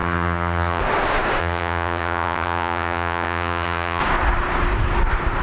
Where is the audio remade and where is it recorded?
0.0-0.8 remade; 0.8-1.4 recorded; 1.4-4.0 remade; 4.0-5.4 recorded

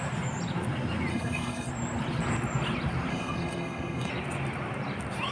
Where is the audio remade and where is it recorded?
0.0-1.1 recorded; 1.1-1.7 remade; 1.7-3.1 recorded; 3.1-4.1 remade; 4.1-5.3 recorded

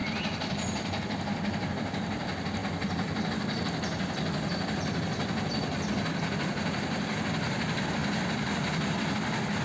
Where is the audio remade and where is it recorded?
0.0-1.7 remade; 1.7-8.0 recorded; 8.0-9.6 remade

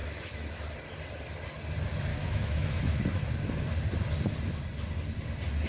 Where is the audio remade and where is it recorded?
0.0-0.6 remade; 0.6-2.1 recorded; 2.1-3.0 remade; 3.0-5.7 recorded

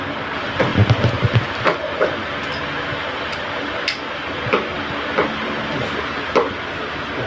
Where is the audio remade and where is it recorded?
0.0-7.3 recorded

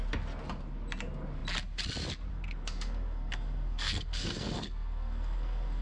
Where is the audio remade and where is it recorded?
0.0-2.3 recorded; 2.3-5.8 remade